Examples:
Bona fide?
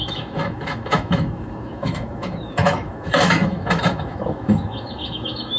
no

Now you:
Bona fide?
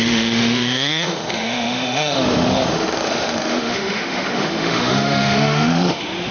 no